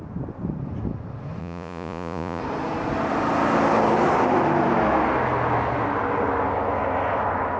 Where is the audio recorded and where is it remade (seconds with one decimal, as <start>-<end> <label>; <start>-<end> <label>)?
0.0-1.4 recorded; 1.4-2.4 remade; 2.4-7.6 recorded